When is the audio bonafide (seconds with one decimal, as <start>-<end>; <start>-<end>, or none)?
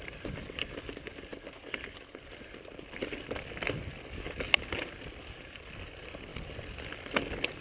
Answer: 0.0-7.6